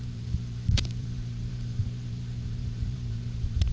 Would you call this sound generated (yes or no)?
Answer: yes